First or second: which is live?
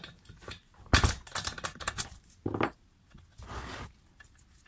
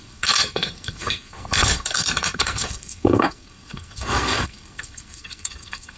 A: first